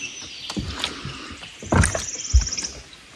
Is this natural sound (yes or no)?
yes